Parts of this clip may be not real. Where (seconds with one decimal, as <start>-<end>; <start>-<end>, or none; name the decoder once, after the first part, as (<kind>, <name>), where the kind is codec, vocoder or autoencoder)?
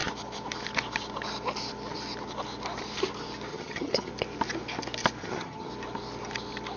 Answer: 3.5-4.1 (vocoder, HiFi-GAN); 5.2-5.7